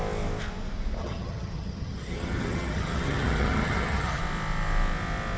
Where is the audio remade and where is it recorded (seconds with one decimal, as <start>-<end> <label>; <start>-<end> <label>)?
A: 0.0-1.0 recorded; 1.0-4.2 remade; 4.2-5.4 recorded